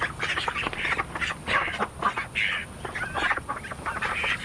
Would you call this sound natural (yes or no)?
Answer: yes